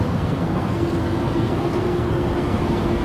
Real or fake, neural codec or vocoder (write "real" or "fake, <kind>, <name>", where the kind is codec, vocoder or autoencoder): fake, codec, SNAC